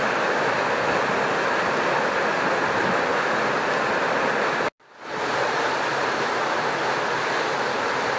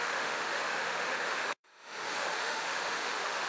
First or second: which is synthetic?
second